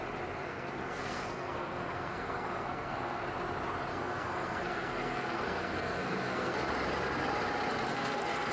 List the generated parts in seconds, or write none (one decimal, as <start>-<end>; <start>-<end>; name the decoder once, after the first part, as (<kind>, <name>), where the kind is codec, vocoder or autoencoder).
0.4-3.2 (codec, SNAC); 3.9-6.7; 7.9-8.5